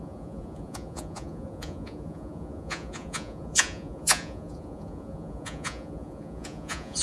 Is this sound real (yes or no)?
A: no